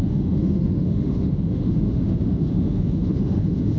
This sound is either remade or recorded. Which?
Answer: remade